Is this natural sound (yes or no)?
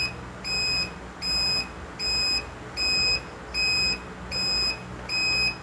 yes